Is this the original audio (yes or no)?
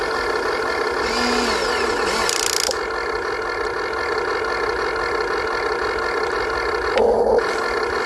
yes